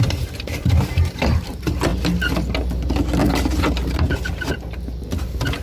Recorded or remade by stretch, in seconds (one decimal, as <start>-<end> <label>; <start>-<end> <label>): 0.0-5.6 recorded